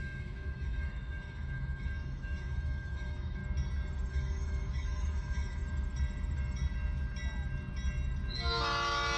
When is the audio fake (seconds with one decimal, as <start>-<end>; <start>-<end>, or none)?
0.0-3.4; 4.1-5.6